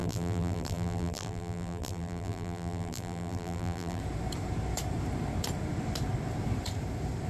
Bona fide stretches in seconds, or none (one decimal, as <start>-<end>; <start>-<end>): 4.0-7.3